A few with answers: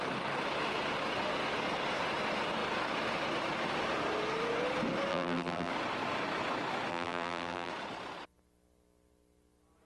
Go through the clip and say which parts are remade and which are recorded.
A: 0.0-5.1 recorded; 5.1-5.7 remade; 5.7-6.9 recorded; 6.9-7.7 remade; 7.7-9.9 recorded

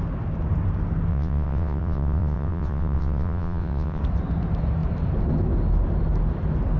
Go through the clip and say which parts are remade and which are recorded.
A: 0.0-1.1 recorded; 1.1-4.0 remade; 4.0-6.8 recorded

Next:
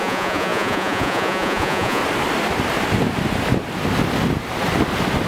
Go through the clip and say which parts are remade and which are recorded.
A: 0.0-2.0 remade; 2.0-5.3 recorded

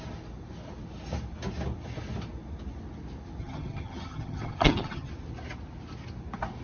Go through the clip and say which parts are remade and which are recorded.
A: 0.0-3.4 recorded; 3.4-5.1 remade; 5.1-6.6 recorded

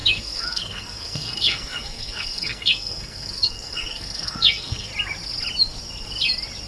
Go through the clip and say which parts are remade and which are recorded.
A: 0.0-4.9 remade; 4.9-6.7 recorded